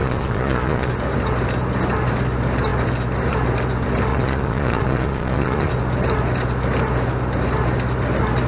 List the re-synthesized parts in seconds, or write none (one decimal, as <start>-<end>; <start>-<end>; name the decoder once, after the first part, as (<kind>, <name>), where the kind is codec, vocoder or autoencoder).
0.0-0.9 (vocoder, Vocos); 4.1-5.7